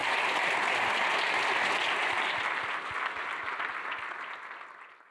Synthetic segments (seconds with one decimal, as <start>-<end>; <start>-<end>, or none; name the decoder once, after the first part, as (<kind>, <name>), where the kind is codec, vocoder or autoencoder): none